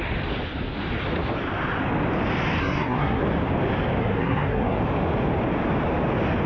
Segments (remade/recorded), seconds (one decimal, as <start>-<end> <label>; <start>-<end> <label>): 0.0-2.6 recorded; 2.6-3.2 remade; 3.2-4.0 recorded; 4.0-4.8 remade; 4.8-6.5 recorded